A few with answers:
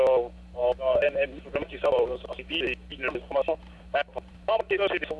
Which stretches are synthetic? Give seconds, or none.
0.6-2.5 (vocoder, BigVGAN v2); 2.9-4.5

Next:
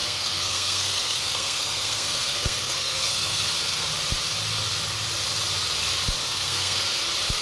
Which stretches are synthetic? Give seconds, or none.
0.0-3.9 (codec, SNAC); 6.2-7.0

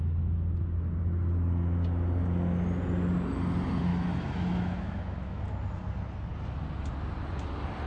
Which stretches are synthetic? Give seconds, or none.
3.9-5.4 (autoencoder, DAC-VAE)

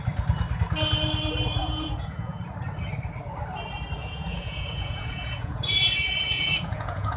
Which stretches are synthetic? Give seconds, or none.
1.6-2.4 (vocoder, Vocos); 4.0-7.2

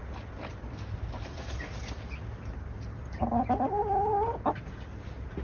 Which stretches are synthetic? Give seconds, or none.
none